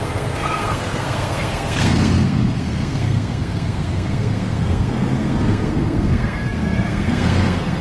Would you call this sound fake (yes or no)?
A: yes